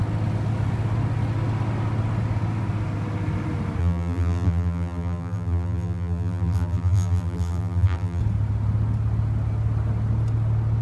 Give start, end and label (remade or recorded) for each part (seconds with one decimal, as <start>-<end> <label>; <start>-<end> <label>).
0.0-3.8 recorded; 3.8-8.2 remade; 8.2-10.8 recorded